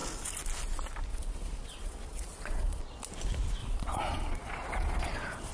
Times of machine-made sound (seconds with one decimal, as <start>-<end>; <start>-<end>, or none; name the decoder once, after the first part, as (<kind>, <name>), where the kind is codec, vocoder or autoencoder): 1.1-2.8 (vocoder, Vocos); 3.6-5.5